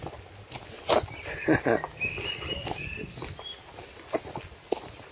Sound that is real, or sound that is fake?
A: real